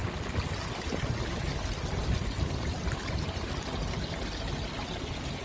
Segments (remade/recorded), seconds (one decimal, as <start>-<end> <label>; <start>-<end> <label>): 0.0-5.4 recorded